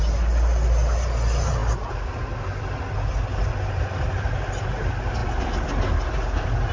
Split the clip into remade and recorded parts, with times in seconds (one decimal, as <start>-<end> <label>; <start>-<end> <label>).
0.0-6.7 recorded